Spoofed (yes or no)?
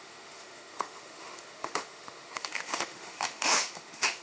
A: yes